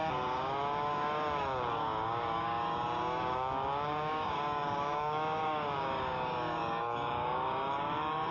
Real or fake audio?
fake